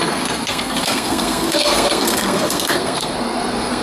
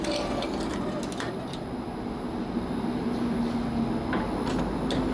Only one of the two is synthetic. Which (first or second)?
first